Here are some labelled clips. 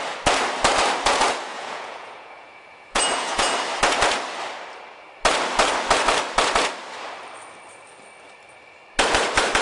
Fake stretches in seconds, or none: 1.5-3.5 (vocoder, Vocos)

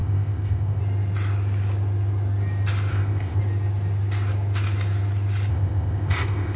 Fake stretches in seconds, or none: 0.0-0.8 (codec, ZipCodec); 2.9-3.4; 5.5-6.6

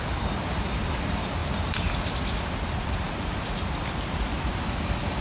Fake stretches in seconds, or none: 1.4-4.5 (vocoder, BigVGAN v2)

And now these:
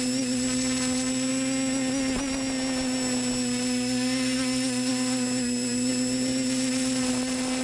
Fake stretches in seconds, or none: none

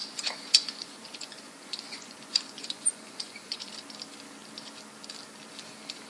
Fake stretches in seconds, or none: 0.0-3.7 (vocoder, Vocos)

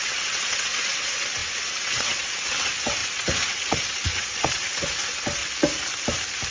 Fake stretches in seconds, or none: 0.0-5.4 (vocoder, WaveNeXt)

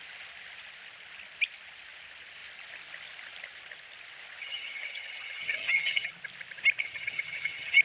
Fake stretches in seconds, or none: 4.4-6.1 (vocoder, HiFi-GAN); 6.8-7.8